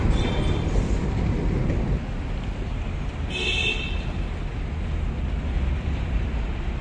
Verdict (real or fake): real